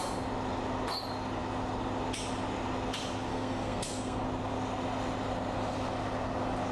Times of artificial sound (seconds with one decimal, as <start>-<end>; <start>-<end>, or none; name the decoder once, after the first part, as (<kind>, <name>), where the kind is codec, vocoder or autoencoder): 3.3-4.2 (codec, SNAC)